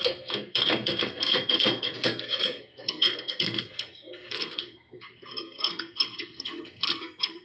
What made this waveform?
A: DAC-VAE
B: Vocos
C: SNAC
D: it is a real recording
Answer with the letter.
C